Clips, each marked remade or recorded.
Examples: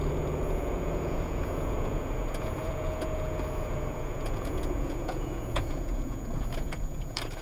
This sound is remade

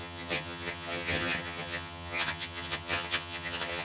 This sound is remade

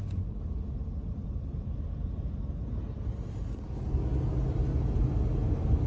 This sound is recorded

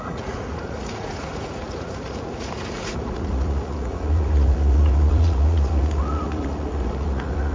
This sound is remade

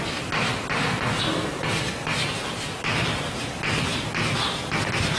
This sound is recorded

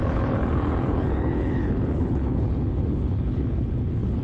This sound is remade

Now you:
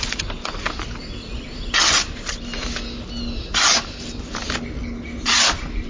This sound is recorded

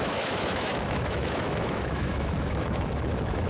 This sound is remade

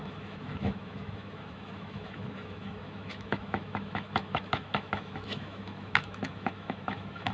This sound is remade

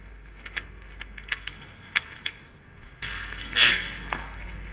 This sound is remade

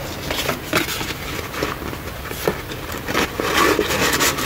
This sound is recorded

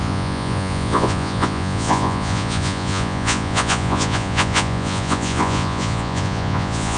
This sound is remade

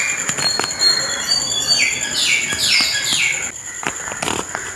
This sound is recorded